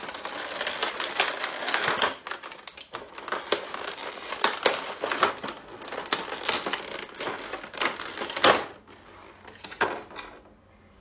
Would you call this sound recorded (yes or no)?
yes